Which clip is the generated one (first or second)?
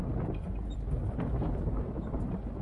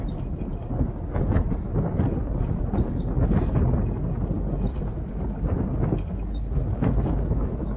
first